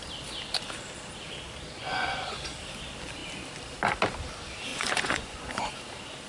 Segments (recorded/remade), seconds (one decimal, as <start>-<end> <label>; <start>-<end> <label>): 0.0-1.8 recorded; 1.8-2.5 remade; 2.5-4.7 recorded; 4.7-5.7 remade; 5.7-6.3 recorded